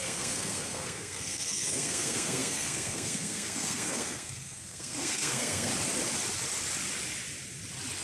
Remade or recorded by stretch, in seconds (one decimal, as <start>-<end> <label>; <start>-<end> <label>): 0.0-5.7 remade; 5.7-8.0 recorded